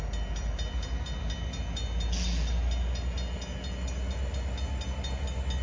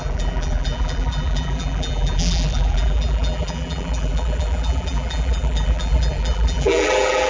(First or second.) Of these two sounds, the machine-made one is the second